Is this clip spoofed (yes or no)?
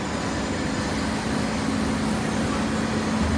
no